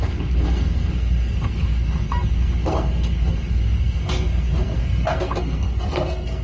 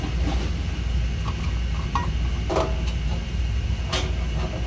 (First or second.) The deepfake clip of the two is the first